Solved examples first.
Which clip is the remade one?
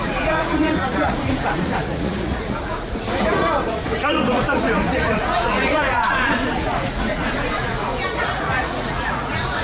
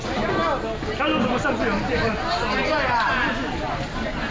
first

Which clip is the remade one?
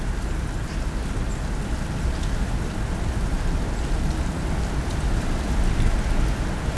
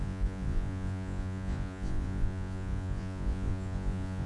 second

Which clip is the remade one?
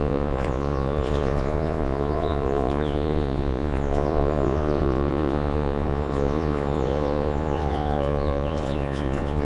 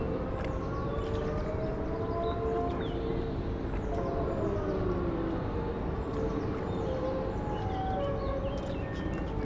first